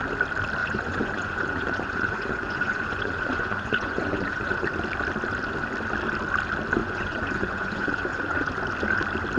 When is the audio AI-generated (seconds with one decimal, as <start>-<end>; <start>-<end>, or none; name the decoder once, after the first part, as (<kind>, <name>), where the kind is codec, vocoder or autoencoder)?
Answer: 0.6-4.7 (vocoder, Vocos); 6.8-8.5